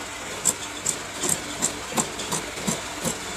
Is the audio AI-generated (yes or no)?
no